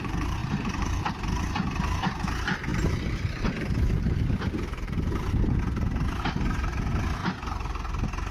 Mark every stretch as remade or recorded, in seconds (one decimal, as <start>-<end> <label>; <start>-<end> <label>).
0.0-0.4 recorded; 0.4-1.1 remade; 1.1-2.7 recorded; 2.7-5.6 remade; 5.6-7.2 recorded; 7.2-7.7 remade; 7.7-8.3 recorded